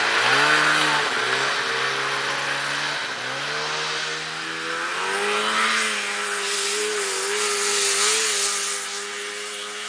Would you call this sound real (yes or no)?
yes